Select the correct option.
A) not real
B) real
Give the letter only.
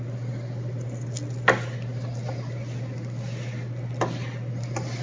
B